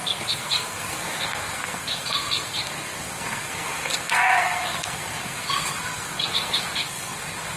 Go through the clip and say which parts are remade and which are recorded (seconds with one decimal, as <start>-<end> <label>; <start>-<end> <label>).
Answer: 0.0-7.6 remade